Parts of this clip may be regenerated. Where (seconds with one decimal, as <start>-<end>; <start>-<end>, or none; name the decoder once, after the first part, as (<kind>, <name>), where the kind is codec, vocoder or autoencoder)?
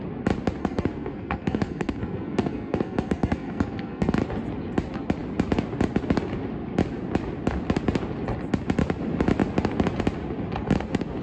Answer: 0.6-4.2 (codec, SNAC)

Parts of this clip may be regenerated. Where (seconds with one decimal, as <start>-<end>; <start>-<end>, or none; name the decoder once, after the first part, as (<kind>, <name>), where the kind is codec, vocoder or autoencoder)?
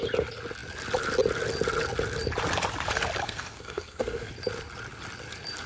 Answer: 3.2-4.3 (codec, SNAC)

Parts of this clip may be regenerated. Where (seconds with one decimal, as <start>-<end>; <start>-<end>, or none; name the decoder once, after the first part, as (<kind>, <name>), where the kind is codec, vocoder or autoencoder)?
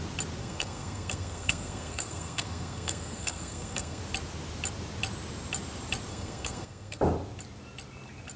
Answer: 0.4-4.0 (codec, SNAC); 6.1-7.0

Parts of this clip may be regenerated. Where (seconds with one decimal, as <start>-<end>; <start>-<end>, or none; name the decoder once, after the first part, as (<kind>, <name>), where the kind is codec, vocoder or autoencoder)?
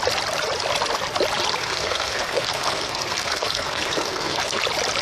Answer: 1.6-4.6 (codec, SNAC)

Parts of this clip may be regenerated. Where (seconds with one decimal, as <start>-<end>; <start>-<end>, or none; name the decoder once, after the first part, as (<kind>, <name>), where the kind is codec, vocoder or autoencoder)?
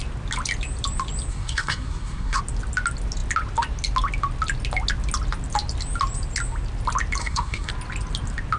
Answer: 1.3-2.4 (codec, SNAC); 7.2-7.7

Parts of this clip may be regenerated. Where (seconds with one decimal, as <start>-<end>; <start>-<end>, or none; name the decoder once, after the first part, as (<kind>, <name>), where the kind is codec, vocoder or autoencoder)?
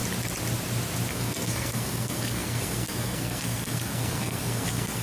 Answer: 1.1-5.0 (codec, SNAC)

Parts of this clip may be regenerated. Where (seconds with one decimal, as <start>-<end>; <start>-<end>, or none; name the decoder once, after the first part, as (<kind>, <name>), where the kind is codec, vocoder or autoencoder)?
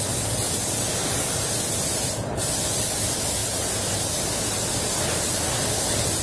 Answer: none